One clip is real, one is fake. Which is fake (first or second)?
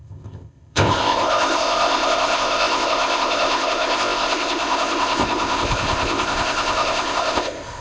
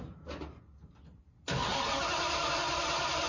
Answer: first